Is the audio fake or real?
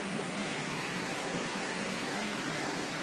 fake